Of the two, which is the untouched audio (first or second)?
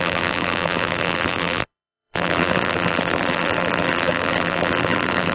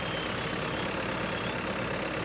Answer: second